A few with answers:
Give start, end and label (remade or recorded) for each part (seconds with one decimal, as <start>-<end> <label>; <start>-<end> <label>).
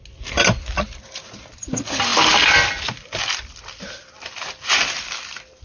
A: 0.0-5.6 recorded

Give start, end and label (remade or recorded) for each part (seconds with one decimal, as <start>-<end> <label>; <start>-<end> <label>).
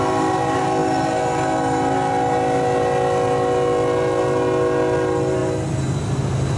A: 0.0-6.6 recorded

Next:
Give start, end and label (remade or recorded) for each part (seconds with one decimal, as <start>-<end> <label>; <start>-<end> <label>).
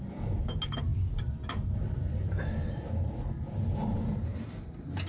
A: 0.0-5.1 recorded